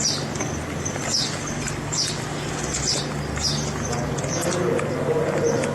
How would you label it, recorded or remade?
recorded